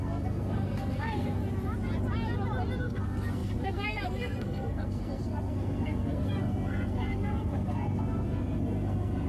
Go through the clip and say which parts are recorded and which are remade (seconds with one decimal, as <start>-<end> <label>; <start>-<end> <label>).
0.0-1.4 remade; 1.4-2.8 recorded; 2.8-9.3 remade